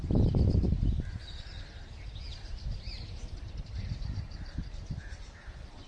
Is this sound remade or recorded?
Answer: remade